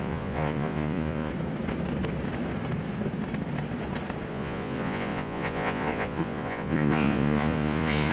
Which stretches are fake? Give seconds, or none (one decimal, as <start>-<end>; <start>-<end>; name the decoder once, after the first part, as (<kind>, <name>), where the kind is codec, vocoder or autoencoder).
0.0-1.3 (vocoder, Vocos); 4.3-8.1

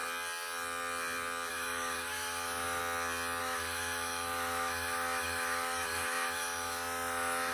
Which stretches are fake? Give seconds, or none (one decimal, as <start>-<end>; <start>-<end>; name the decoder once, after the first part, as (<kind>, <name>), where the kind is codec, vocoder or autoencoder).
1.5-2.8 (autoencoder, DAC-VAE); 3.4-7.5

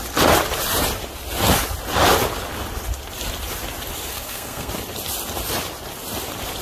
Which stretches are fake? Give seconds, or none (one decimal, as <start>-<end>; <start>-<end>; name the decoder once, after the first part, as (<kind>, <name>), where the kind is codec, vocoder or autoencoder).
4.1-4.7 (codec, SNAC)

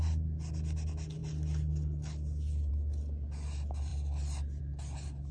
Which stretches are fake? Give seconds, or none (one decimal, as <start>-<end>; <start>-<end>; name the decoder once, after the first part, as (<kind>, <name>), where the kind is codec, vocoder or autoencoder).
none